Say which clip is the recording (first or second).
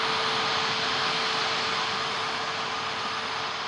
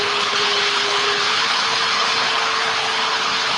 first